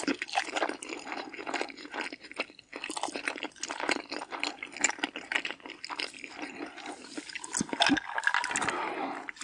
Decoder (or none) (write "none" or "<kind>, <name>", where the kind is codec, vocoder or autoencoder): none